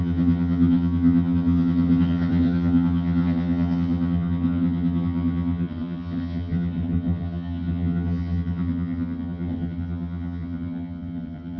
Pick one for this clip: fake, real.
fake